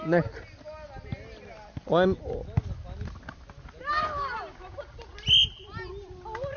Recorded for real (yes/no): yes